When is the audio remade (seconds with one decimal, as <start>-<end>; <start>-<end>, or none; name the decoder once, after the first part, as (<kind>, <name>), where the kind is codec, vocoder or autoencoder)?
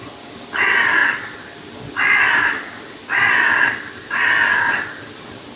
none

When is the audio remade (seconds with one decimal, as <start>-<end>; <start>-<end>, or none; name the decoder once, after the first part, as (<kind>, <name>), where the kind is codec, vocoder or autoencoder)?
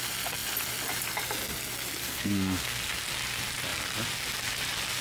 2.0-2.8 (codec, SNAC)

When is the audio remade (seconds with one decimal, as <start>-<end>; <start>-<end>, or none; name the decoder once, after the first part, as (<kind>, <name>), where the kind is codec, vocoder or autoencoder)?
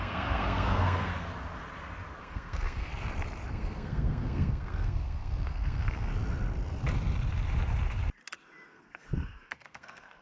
0.0-1.1 (codec, SNAC); 2.2-2.9; 3.5-6.1; 8.7-10.2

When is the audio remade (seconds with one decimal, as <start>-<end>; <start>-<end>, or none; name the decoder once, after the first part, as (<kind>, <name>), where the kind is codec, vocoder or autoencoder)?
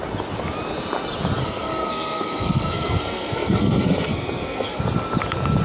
1.4-4.8 (codec, SNAC)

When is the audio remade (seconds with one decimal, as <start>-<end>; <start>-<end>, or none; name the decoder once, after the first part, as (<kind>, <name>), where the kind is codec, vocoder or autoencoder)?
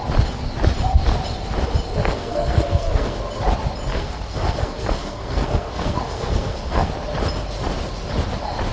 2.0-3.2 (codec, SNAC); 3.9-6.9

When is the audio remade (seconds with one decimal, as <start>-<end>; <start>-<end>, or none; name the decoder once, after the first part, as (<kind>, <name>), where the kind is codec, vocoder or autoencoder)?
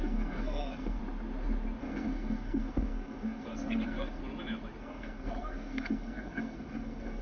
0.0-1.0 (codec, SNAC); 1.8-4.2; 4.8-7.2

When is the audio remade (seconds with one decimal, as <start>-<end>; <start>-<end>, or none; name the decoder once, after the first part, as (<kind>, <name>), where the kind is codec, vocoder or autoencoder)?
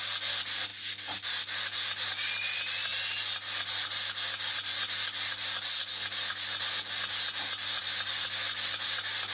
none